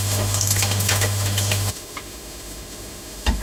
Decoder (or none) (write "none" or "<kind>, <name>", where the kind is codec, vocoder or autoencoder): autoencoder, DAC-VAE